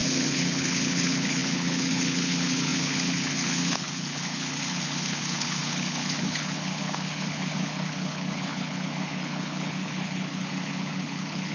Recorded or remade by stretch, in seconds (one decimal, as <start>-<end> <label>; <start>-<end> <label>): 0.0-11.5 remade